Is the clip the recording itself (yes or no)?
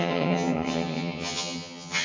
no